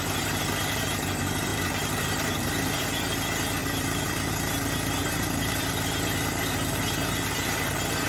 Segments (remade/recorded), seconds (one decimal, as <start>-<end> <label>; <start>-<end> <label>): 0.0-1.5 recorded; 1.5-2.5 remade; 2.5-3.6 recorded; 3.6-4.3 remade; 4.3-5.0 recorded; 5.0-6.8 remade; 6.8-8.1 recorded